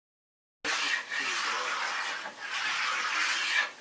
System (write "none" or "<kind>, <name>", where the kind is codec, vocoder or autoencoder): none